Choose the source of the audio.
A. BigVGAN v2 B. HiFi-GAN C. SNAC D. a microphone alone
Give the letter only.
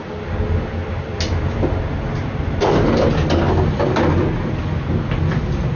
D